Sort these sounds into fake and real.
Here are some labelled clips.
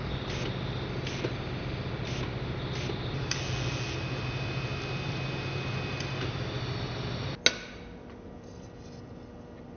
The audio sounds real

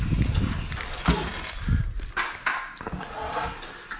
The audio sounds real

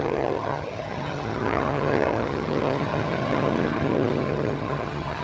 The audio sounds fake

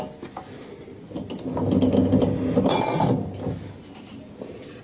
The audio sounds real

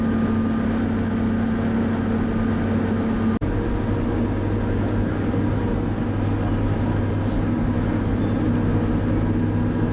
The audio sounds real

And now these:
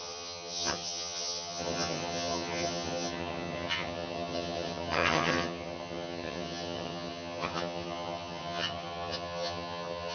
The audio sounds fake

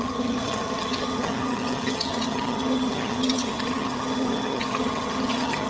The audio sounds fake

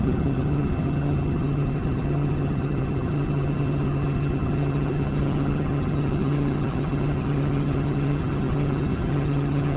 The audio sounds fake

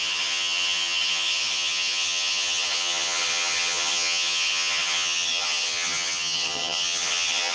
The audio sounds fake